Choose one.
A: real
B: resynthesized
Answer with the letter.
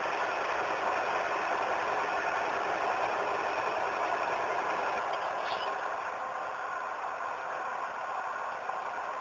A